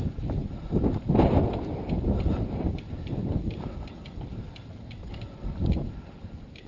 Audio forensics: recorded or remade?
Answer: recorded